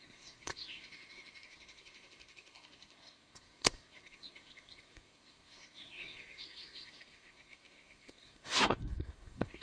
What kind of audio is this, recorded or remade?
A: remade